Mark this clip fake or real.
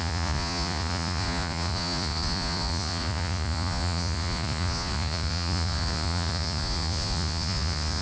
fake